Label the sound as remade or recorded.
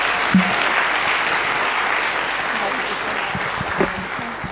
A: recorded